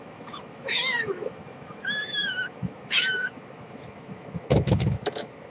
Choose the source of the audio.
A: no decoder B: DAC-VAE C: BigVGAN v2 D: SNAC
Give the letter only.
B